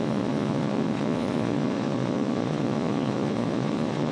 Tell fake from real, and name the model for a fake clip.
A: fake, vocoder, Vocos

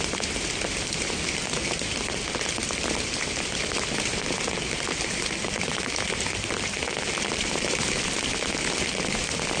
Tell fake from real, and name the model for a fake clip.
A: real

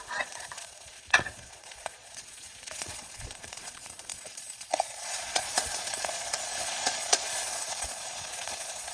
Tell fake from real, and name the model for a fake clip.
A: fake, vocoder, Vocos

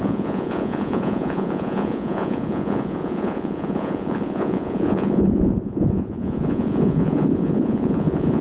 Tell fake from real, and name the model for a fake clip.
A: fake, vocoder, Vocos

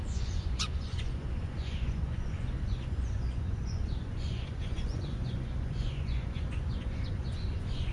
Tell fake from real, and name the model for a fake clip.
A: fake, vocoder, Vocos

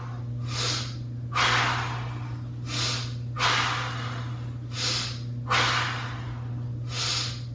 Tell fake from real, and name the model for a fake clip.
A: real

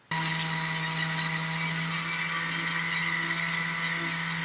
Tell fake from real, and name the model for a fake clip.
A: real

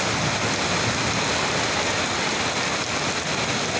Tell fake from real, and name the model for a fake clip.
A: real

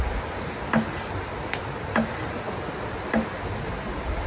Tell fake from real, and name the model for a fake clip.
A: real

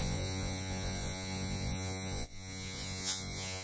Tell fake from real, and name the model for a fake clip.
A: fake, vocoder, Vocos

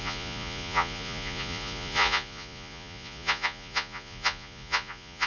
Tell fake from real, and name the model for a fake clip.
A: fake, vocoder, Vocos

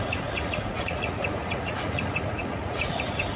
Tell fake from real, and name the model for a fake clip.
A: fake, vocoder, Vocos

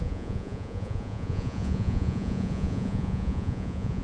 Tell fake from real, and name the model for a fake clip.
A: fake, vocoder, Vocos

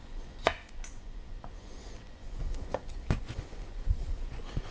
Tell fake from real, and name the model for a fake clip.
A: fake, vocoder, Vocos